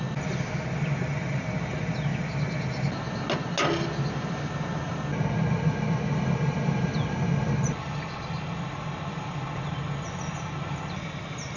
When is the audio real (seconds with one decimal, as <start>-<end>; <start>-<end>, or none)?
0.0-11.6